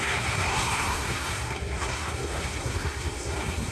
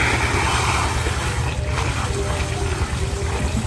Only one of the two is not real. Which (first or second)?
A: first